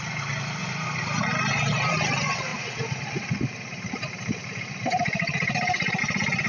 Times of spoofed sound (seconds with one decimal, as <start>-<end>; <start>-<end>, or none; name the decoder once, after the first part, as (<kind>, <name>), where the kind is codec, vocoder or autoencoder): 0.6-1.2 (vocoder, BigVGAN v2); 2.5-6.0